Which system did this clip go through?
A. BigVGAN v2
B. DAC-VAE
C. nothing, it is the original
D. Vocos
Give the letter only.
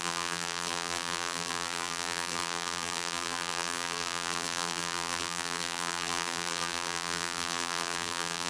A